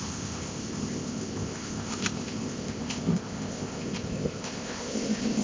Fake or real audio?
fake